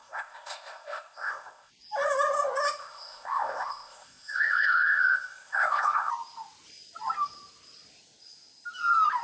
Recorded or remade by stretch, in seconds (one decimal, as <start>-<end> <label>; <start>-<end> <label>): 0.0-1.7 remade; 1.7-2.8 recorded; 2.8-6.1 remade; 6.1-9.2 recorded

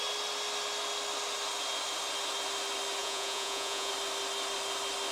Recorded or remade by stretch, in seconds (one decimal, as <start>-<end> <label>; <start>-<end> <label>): 0.0-3.0 recorded; 3.0-3.9 remade; 3.9-5.1 recorded

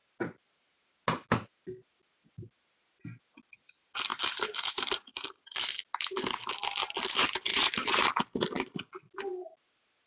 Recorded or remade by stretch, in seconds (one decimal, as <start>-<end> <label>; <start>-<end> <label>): 0.0-4.1 recorded; 4.1-5.2 remade; 5.2-7.5 recorded; 7.5-8.1 remade; 8.1-10.1 recorded